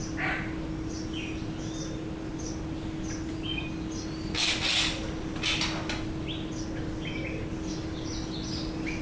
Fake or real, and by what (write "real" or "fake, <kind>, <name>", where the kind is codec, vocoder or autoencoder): real